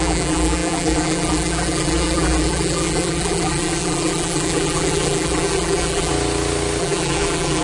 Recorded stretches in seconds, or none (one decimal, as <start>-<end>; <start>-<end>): 6.1-6.8